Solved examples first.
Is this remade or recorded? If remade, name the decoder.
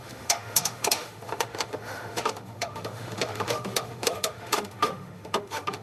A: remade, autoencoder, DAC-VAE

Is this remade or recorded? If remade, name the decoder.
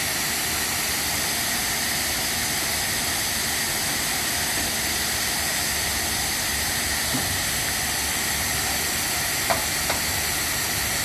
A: recorded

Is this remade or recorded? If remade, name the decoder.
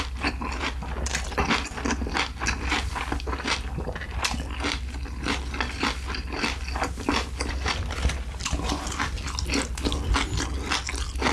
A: recorded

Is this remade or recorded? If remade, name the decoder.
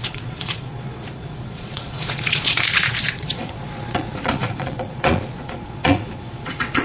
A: remade, vocoder, Vocos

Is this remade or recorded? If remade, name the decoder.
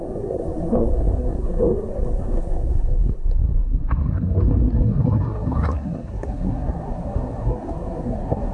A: remade, codec, SNAC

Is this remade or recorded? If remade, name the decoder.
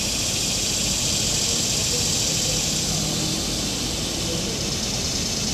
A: recorded